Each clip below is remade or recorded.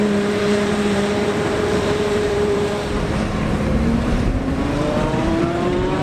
remade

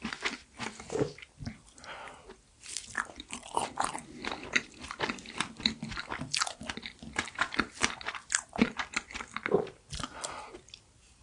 remade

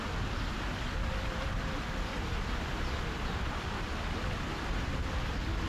remade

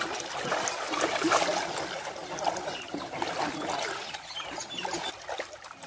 recorded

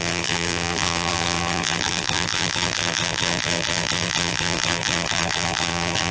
remade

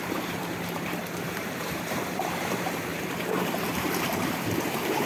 remade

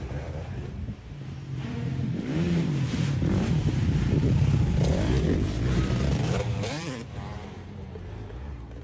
remade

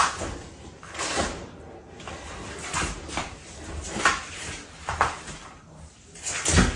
remade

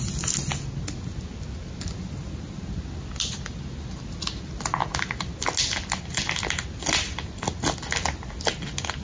recorded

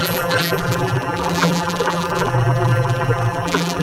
remade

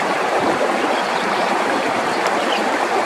remade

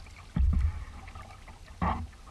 remade